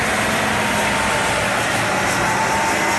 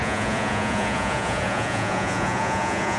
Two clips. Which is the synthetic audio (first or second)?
second